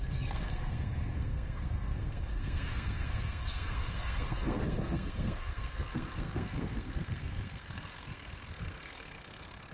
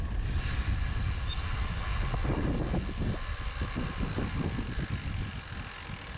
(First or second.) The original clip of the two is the second